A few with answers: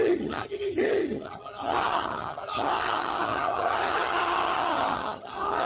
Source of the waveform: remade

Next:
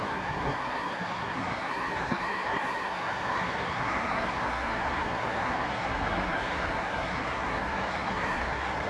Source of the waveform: remade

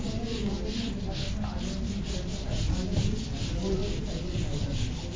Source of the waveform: recorded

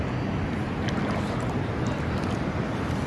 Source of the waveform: recorded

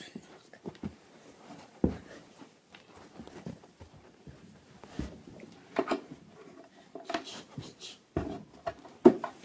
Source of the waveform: remade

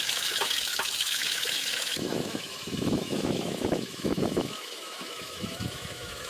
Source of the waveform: remade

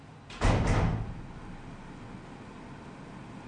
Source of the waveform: recorded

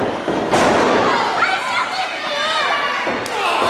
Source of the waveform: recorded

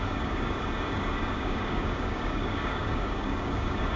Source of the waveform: remade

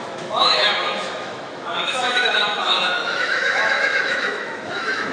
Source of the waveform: remade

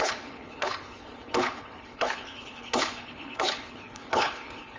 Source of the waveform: remade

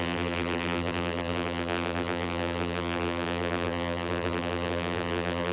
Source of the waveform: remade